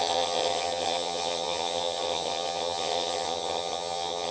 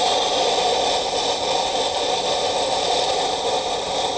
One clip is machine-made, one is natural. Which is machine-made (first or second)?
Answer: first